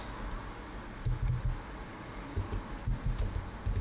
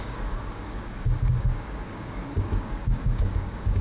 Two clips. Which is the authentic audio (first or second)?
first